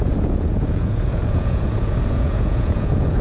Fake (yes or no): yes